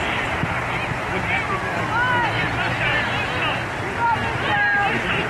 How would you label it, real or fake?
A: real